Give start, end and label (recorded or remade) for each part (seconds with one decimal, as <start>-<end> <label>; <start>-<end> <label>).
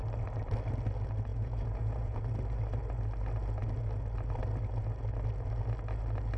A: 0.0-1.3 recorded; 1.3-2.2 remade; 2.2-6.4 recorded